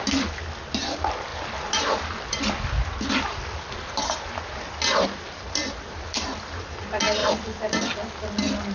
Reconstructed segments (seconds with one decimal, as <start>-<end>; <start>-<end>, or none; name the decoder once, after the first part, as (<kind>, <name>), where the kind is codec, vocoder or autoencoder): 1.3-2.3 (vocoder, BigVGAN v2); 3.3-6.8; 7.2-7.8